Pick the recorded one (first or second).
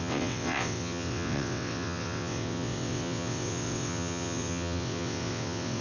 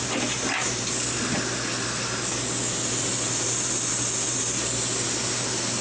second